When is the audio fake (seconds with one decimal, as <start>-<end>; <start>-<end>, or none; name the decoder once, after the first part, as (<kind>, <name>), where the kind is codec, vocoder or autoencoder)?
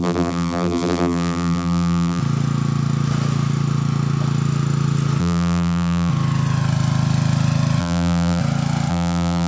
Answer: 0.0-2.2 (vocoder, BigVGAN v2); 5.2-6.1; 7.8-8.4; 8.9-9.5